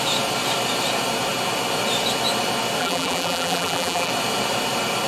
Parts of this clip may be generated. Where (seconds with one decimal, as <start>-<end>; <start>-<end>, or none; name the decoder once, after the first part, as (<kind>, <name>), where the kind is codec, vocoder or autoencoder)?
2.8-4.1 (vocoder, BigVGAN v2)